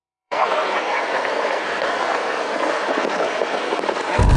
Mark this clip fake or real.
fake